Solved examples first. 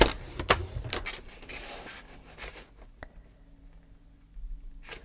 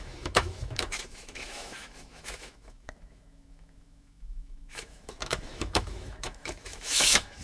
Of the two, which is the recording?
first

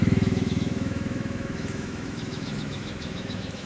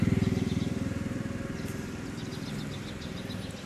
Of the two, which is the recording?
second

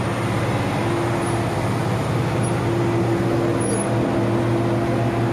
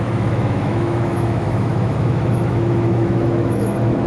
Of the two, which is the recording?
first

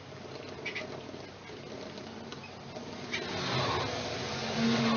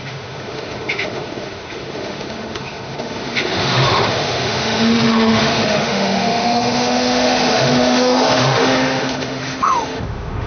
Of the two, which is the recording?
first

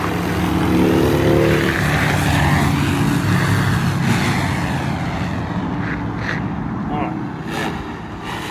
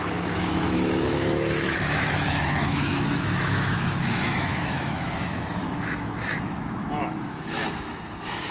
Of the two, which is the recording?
first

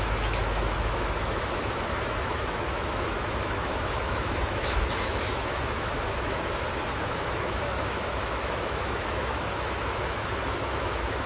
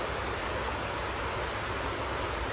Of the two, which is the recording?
second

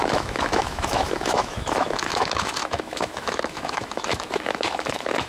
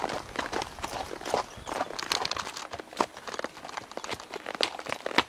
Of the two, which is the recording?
second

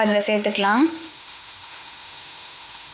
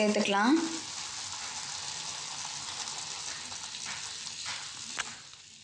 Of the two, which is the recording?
second